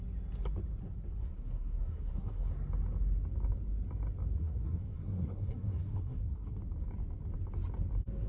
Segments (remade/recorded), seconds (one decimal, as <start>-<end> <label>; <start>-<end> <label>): 0.0-1.2 recorded; 1.2-2.5 remade; 2.5-4.4 recorded; 4.4-6.6 remade; 6.6-8.3 recorded